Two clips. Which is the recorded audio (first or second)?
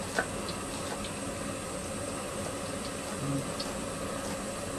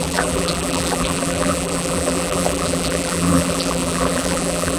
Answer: first